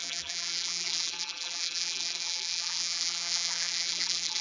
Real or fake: fake